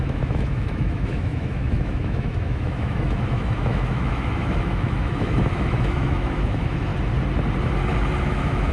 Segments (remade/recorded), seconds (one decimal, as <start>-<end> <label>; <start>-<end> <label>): 0.0-6.9 remade; 6.9-8.2 recorded; 8.2-8.7 remade